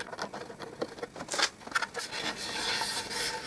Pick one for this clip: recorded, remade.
recorded